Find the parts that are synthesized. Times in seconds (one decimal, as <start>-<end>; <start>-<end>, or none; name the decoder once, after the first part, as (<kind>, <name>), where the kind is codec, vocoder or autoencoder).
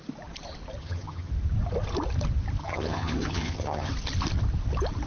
0.8-1.3 (vocoder, HiFi-GAN); 2.6-3.9